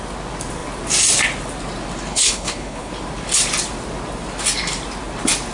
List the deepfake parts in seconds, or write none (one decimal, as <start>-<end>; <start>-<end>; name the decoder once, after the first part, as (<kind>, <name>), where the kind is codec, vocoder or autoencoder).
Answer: 2.1-2.9 (codec, HILCodec)